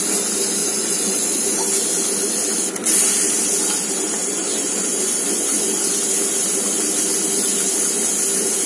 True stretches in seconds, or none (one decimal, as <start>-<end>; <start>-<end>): 0.0-0.6; 1.4-4.2; 6.0-8.7